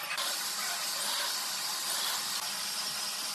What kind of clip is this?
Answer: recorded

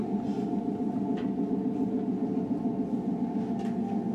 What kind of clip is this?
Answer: recorded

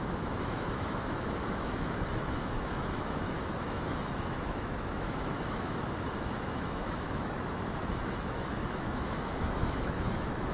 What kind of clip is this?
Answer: remade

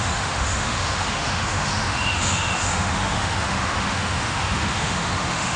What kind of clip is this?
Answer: remade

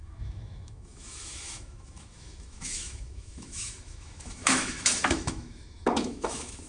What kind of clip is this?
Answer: remade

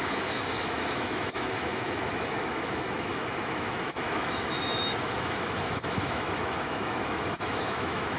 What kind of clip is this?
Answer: remade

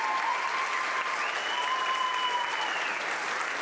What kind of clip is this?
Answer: recorded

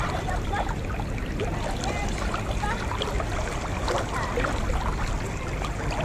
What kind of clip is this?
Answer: recorded